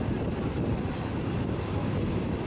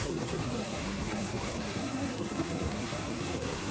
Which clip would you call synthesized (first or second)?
second